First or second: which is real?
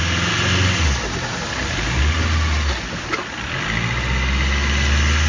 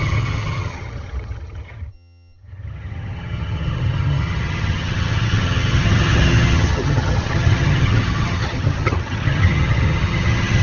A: first